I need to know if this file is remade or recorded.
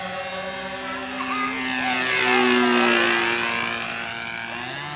recorded